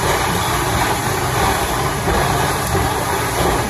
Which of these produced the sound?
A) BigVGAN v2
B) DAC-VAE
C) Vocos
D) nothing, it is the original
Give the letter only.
A